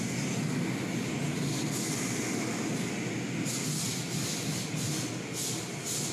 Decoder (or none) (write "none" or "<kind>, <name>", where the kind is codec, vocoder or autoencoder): none